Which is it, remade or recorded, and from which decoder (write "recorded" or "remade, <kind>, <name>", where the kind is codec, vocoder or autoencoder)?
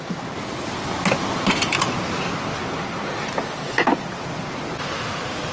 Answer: recorded